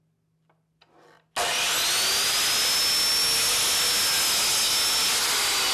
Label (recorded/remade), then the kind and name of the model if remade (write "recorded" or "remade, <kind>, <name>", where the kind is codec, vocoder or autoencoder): recorded